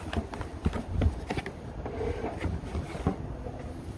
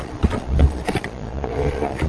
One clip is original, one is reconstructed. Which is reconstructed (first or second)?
second